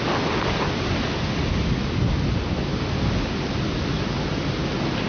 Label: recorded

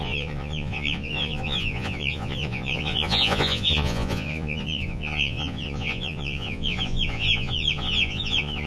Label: remade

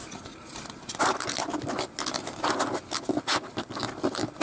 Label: recorded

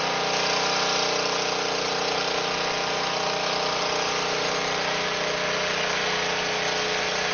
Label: recorded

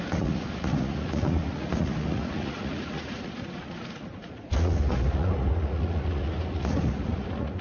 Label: remade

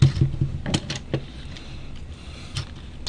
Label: recorded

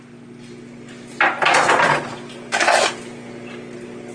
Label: recorded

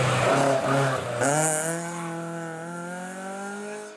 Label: recorded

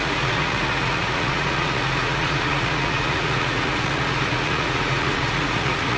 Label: remade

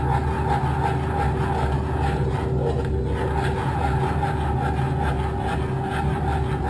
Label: recorded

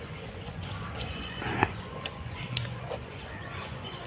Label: remade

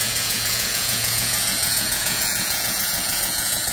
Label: remade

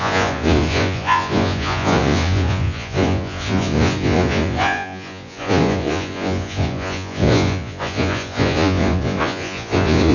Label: remade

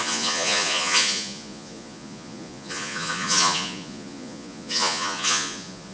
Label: remade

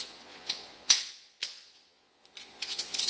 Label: remade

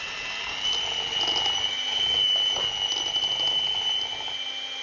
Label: recorded